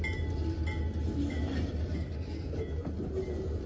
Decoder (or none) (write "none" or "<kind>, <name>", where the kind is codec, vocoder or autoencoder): none